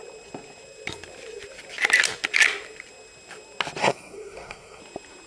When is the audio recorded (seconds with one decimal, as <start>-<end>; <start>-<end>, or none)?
0.0-3.8; 4.8-5.3

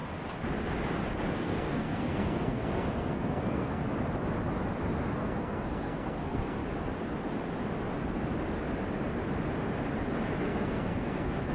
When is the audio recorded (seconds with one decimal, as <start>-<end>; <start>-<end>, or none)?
0.0-1.3; 3.8-5.1; 6.6-10.4

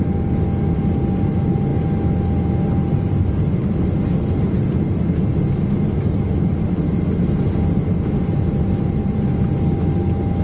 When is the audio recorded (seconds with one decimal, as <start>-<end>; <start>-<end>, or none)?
0.0-10.4